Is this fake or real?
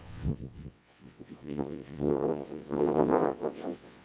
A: fake